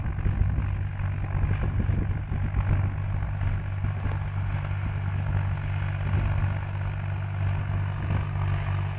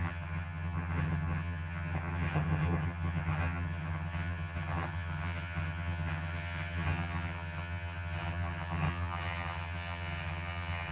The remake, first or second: second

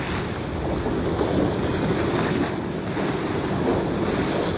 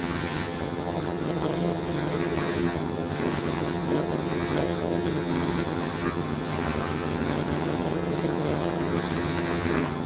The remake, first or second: second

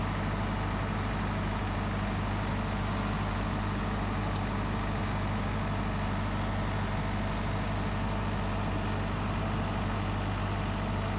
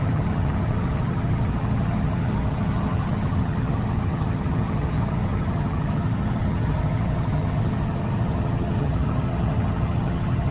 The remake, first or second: second